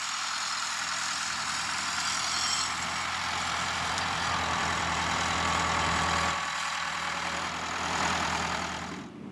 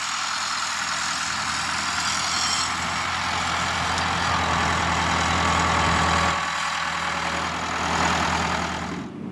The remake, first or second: first